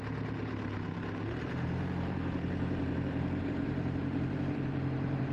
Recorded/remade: remade